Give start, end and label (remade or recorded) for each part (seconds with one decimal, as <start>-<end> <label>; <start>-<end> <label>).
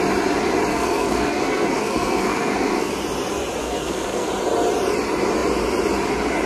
0.0-0.7 recorded; 0.7-2.9 remade; 2.9-3.6 recorded; 3.6-4.3 remade; 4.3-6.5 recorded